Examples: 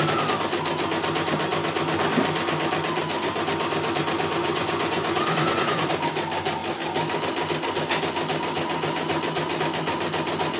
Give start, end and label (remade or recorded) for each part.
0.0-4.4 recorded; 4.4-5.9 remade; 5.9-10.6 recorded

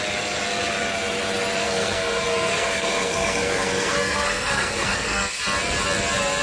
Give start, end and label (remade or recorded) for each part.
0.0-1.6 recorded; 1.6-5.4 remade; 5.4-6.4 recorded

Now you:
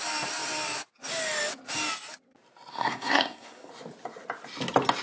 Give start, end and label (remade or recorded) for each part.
0.0-2.7 recorded; 2.7-3.7 remade; 3.7-5.0 recorded

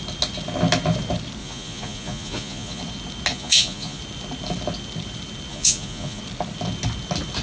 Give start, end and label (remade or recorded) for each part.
0.0-1.4 recorded; 1.4-2.8 remade; 2.8-3.3 recorded; 3.3-4.0 remade; 4.0-5.5 recorded; 5.5-6.2 remade; 6.2-7.4 recorded